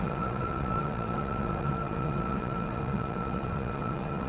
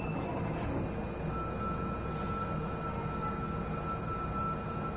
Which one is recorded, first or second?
second